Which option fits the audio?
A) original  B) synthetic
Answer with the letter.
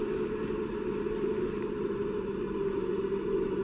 B